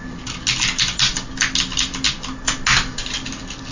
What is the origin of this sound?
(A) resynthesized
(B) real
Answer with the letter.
B